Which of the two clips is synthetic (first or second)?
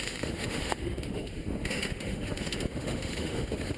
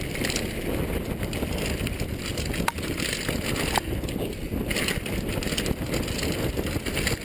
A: first